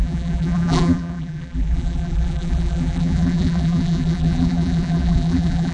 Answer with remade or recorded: remade